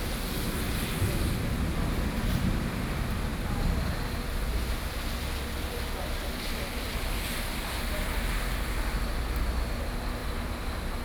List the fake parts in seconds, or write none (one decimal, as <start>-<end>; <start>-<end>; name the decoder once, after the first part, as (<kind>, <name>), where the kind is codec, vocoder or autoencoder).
10.2-11.0 (vocoder, BigVGAN v2)